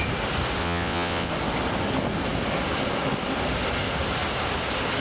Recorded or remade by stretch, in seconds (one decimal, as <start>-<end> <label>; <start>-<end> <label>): 0.0-0.6 recorded; 0.6-1.3 remade; 1.3-5.0 recorded